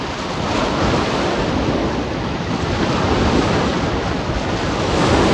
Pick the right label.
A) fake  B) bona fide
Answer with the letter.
B